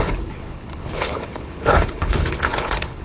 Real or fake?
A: fake